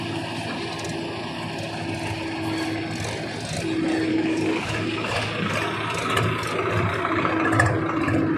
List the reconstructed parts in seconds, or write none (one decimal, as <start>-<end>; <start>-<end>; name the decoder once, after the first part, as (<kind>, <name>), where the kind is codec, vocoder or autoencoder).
4.1-5.5 (codec, DAC)